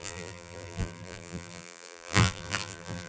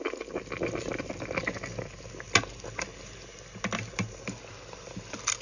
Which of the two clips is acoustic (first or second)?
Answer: second